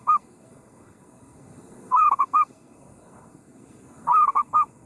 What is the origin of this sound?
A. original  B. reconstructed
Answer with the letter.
B